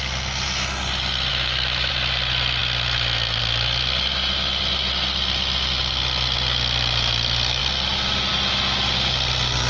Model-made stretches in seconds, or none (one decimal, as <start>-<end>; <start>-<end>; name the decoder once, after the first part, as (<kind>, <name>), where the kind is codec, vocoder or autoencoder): 1.3-1.9 (autoencoder, DAC-VAE)